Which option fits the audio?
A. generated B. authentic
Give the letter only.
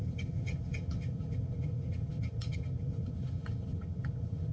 A